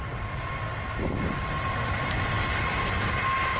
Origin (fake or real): real